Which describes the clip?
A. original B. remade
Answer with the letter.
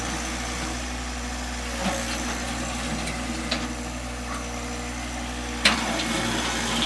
A